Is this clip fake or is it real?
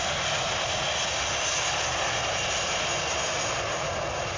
real